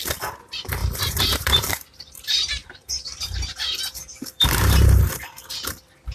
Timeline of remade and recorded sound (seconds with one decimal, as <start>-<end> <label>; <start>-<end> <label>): 0.0-0.8 recorded; 0.8-2.1 remade; 2.1-2.6 recorded; 2.6-5.1 remade; 5.1-6.1 recorded